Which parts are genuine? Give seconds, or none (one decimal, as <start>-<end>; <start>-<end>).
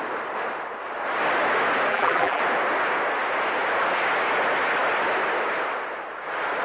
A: 0.0-1.9; 2.4-6.6